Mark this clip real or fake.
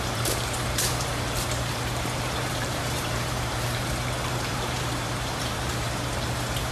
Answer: fake